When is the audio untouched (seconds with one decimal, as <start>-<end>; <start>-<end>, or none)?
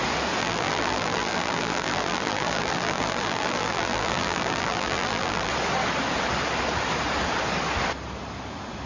0.0-0.4; 5.5-8.9